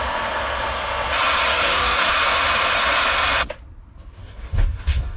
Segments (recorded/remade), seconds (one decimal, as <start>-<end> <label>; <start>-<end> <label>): 0.0-1.5 recorded; 1.5-2.1 remade; 2.1-4.2 recorded; 4.2-5.2 remade